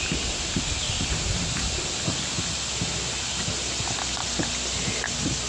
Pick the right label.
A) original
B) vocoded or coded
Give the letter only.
A